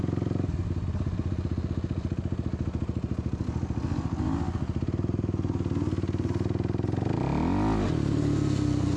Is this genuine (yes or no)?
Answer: yes